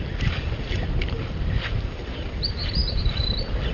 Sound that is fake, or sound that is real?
real